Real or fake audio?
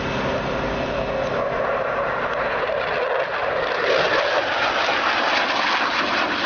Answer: real